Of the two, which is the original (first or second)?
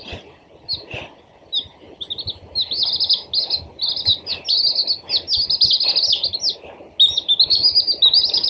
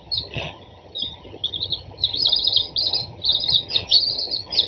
first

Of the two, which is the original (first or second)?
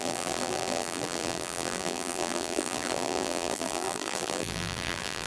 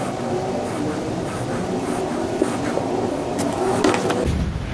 second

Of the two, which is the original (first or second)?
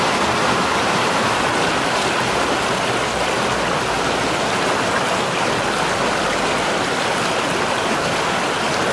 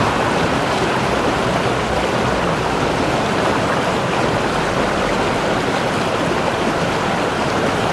first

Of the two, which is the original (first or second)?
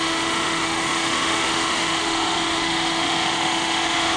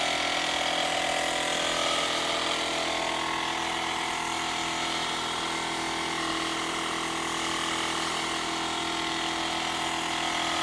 second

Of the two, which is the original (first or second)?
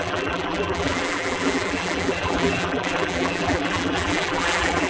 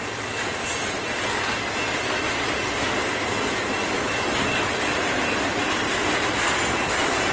second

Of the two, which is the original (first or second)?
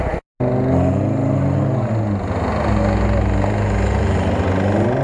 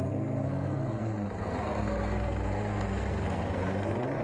first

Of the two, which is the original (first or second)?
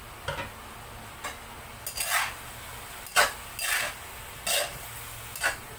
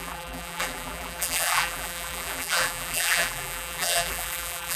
first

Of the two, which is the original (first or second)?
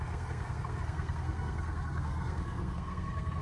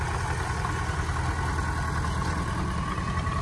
second